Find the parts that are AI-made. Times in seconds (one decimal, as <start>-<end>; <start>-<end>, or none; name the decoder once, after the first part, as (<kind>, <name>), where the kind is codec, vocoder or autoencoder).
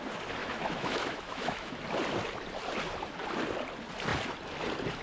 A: 0.4-1.8 (autoencoder, DAC-VAE)